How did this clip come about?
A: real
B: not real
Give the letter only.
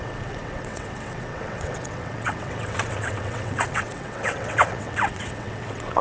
B